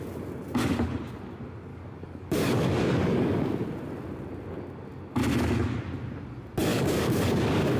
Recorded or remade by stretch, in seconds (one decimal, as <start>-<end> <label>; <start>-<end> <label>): 0.0-1.7 recorded; 1.7-3.5 remade; 3.5-6.7 recorded; 6.7-7.8 remade